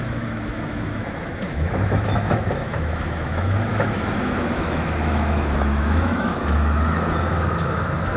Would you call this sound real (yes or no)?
no